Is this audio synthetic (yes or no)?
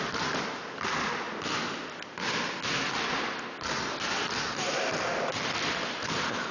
no